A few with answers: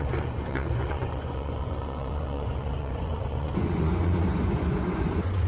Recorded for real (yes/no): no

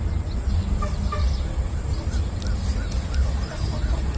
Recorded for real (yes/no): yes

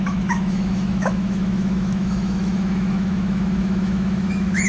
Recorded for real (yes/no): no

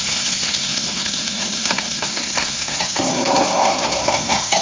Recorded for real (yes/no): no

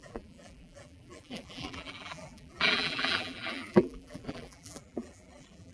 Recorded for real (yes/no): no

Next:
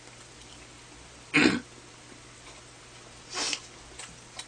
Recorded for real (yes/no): yes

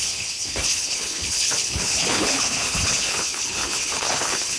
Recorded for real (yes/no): no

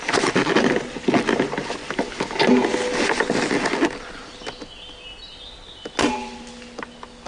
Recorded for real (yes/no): yes